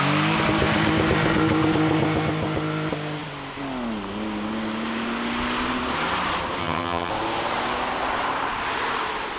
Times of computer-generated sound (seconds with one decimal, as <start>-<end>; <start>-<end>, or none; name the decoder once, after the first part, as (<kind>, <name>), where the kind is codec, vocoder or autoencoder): 6.6-7.1 (vocoder, HiFi-GAN)